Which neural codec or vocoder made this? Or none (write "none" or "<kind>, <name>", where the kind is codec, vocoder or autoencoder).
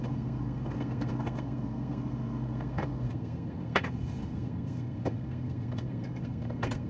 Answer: codec, SNAC